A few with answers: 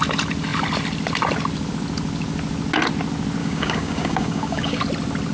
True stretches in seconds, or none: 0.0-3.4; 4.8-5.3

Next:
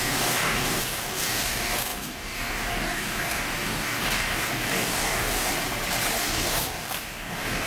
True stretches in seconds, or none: 5.5-6.2

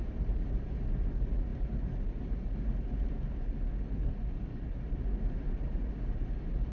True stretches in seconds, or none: 0.0-6.7

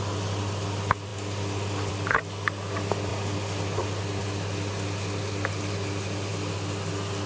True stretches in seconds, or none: 0.0-7.3